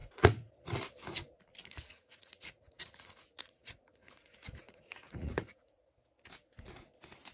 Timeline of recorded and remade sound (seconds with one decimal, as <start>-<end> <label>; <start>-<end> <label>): 0.0-0.5 remade; 0.5-1.6 recorded; 1.6-5.9 remade; 5.9-7.3 recorded